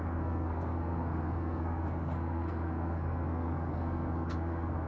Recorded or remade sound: remade